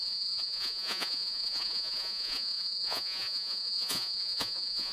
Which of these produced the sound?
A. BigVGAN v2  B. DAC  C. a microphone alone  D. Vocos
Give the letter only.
D